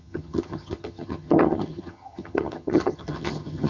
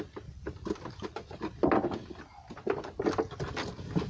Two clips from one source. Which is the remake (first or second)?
first